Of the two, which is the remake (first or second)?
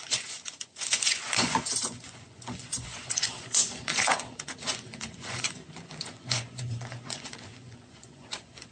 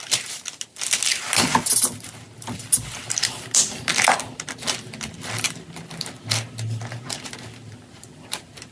first